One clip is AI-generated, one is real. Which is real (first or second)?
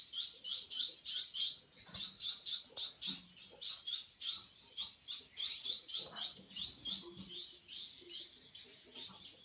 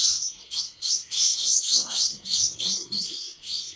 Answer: first